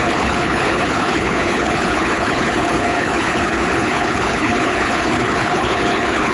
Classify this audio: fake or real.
fake